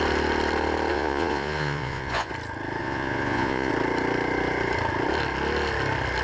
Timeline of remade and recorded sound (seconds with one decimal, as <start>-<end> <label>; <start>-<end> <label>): 0.0-0.9 recorded; 0.9-2.3 remade; 2.3-2.8 recorded; 2.8-3.7 remade; 3.7-6.2 recorded